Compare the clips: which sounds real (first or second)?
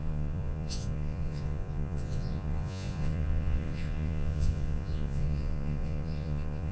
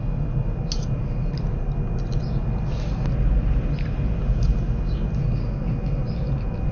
second